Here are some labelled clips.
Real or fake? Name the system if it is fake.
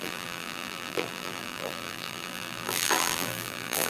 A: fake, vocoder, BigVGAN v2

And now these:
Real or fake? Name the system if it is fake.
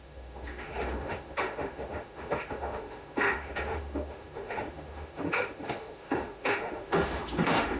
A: fake, autoencoder, DAC-VAE